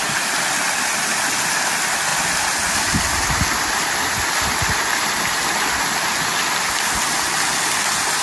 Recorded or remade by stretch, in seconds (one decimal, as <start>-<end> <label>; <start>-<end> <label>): 0.0-8.2 recorded